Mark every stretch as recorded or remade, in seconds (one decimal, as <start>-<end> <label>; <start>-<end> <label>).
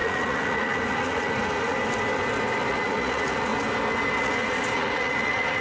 0.0-1.8 remade; 1.8-2.7 recorded; 2.7-3.5 remade; 3.5-4.2 recorded; 4.2-5.6 remade